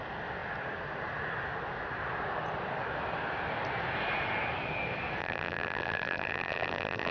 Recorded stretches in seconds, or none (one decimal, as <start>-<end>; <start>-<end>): 0.0-5.2